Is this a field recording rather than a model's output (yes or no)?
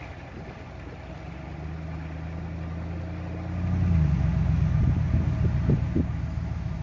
yes